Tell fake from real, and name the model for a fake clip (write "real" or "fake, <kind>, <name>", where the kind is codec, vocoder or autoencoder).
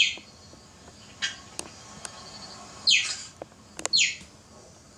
real